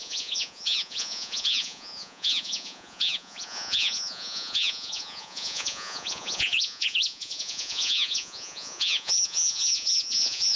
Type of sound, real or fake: fake